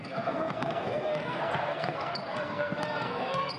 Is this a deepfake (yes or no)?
yes